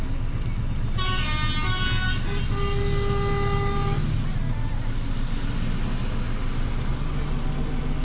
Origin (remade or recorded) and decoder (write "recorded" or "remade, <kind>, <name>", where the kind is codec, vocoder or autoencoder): recorded